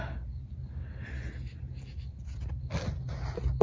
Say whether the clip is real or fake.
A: real